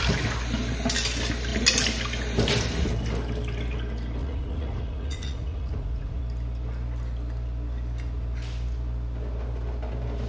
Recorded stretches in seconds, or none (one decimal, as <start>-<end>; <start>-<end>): 0.0-4.2; 6.2-10.3